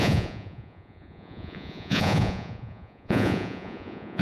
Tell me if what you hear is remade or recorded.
remade